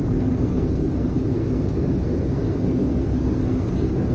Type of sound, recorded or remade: remade